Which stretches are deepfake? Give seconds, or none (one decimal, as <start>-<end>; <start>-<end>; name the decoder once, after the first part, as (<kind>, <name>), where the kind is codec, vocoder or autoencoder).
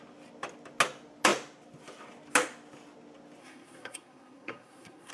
3.4-5.1 (codec, SNAC)